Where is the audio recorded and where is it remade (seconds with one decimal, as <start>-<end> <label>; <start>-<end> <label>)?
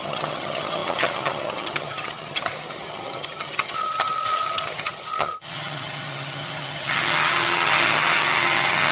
0.0-8.9 remade